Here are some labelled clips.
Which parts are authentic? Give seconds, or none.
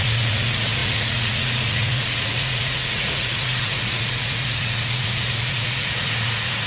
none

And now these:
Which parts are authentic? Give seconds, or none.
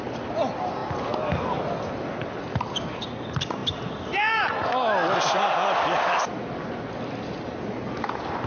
0.0-8.5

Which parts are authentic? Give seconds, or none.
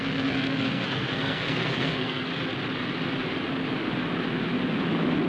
2.3-5.3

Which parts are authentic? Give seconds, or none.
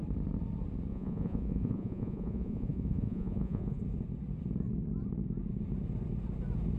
0.0-0.9; 3.8-6.8